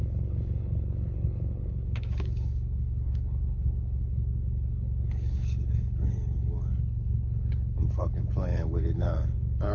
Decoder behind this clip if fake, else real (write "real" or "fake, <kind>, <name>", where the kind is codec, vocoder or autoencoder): fake, codec, HILCodec